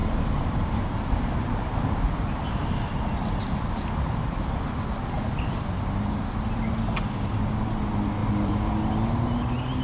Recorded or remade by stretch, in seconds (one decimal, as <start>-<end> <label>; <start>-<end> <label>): 0.0-0.7 remade; 0.7-8.2 recorded; 8.2-8.7 remade; 8.7-9.8 recorded